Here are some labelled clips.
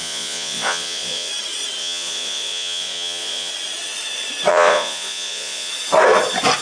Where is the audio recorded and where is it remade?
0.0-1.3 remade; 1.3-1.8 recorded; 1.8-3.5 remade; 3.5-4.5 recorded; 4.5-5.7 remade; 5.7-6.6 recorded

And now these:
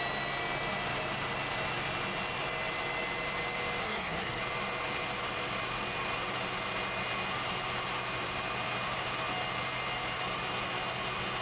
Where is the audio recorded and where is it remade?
0.0-3.8 recorded; 3.8-4.4 remade; 4.4-11.4 recorded